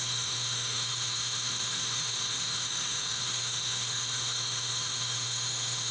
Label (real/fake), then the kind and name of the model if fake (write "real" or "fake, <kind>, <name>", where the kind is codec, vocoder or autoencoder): fake, autoencoder, DAC-VAE